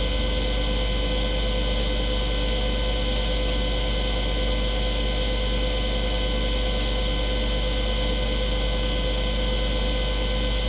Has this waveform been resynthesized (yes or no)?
no